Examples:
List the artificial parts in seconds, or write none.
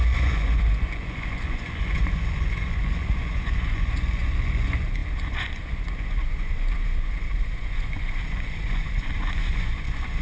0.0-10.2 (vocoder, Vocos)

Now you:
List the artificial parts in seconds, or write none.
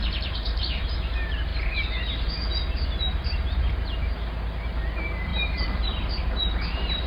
0.0-0.8 (vocoder, BigVGAN v2); 5.3-5.8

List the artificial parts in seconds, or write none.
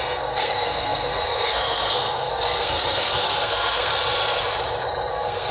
0.0-3.9 (codec, SNAC); 5.1-5.5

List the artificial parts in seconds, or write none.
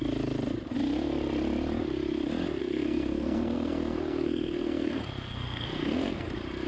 2.6-6.3 (codec, SNAC)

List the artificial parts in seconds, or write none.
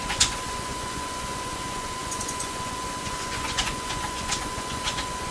0.0-5.3 (vocoder, Vocos)